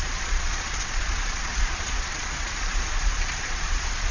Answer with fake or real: fake